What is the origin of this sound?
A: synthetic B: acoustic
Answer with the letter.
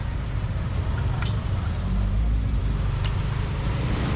A